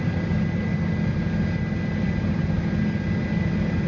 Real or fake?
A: real